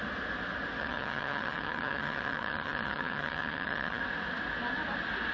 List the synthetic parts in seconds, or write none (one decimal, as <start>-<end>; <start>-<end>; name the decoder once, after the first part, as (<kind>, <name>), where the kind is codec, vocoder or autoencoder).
0.8-4.0 (vocoder, HiFi-GAN)